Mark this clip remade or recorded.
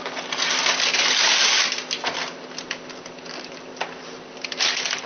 recorded